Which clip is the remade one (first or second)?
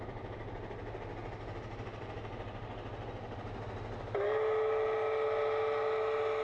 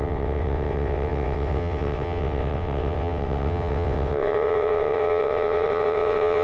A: second